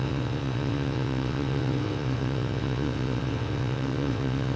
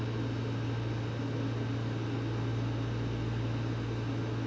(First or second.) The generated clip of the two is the first